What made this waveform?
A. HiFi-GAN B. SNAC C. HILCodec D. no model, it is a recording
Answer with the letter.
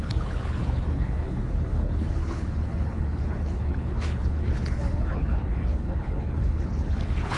C